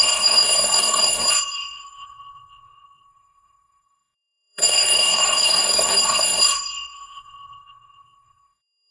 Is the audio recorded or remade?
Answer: remade